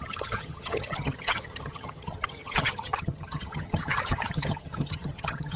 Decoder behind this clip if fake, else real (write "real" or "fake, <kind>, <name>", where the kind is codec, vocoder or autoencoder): fake, vocoder, HiFi-GAN